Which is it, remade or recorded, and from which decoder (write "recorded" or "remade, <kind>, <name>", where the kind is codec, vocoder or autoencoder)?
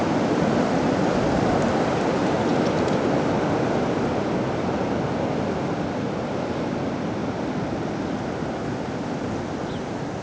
recorded